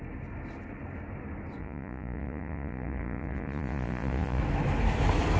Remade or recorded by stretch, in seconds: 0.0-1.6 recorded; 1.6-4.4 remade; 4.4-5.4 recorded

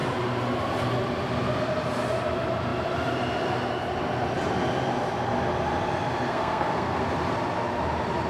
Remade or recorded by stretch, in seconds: 0.0-6.3 recorded; 6.3-7.0 remade; 7.0-8.3 recorded

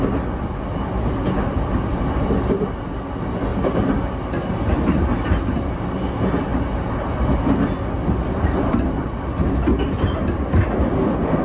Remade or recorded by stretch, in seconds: 0.0-11.4 recorded